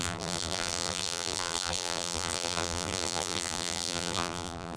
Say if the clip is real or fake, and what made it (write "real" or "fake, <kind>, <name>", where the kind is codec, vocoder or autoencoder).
fake, vocoder, BigVGAN v2